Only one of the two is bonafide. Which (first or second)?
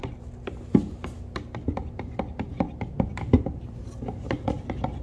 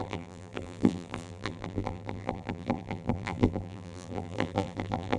first